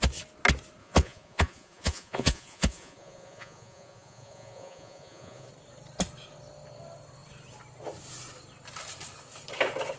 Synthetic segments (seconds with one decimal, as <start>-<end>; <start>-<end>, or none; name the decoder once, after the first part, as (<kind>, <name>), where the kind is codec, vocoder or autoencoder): 0.8-5.5 (vocoder, Vocos)